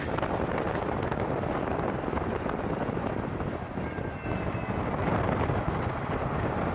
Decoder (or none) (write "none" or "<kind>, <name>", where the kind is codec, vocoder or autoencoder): none